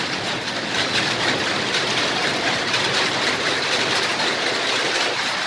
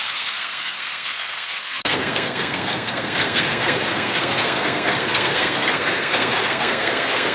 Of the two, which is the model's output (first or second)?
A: second